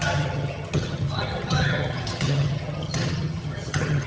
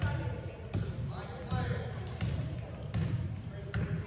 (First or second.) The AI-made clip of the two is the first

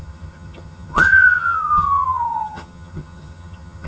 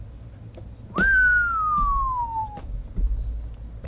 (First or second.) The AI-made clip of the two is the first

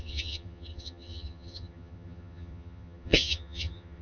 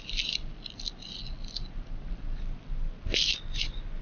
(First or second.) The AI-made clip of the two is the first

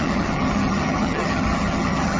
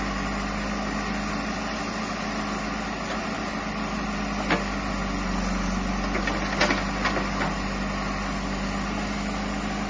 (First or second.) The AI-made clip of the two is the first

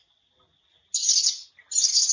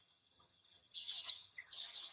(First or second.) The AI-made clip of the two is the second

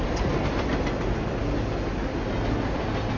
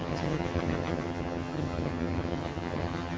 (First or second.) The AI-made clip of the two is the second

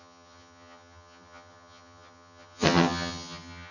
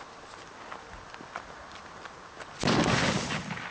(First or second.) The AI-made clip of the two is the first